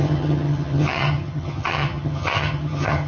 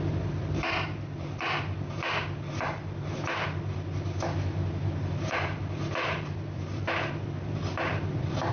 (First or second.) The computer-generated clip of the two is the first